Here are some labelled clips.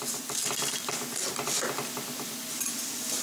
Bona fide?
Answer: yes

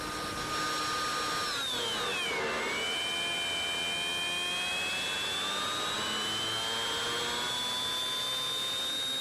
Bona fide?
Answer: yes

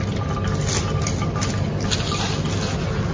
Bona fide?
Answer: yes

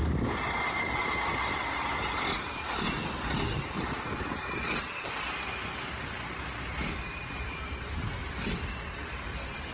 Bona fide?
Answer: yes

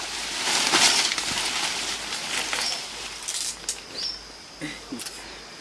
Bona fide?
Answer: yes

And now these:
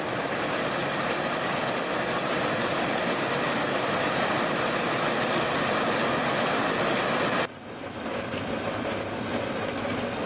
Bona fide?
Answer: yes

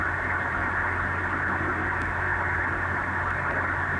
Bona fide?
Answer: yes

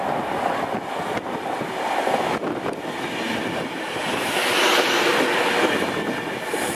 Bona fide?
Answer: yes